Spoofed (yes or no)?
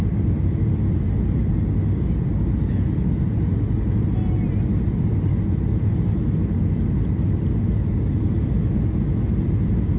no